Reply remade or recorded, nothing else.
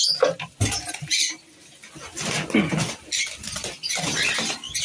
recorded